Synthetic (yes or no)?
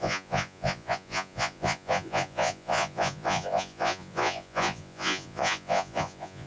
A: yes